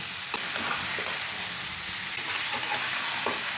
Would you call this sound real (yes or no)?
yes